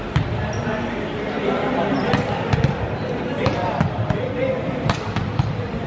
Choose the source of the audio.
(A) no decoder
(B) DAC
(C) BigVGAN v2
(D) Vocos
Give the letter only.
A